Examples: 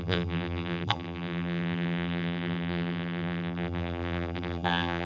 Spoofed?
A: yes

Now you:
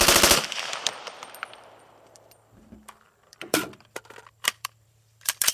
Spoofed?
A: yes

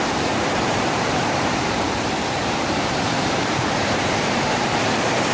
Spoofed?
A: yes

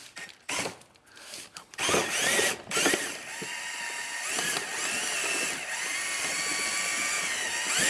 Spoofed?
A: no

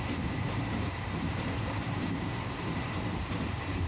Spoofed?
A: yes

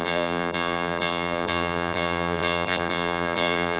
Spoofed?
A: yes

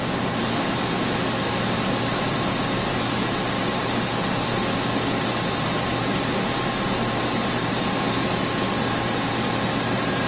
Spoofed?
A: no